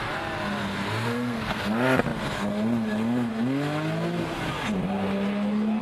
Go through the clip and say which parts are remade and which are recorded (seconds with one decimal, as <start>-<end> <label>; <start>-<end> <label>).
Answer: 0.0-1.1 recorded; 1.1-1.6 remade; 1.6-5.8 recorded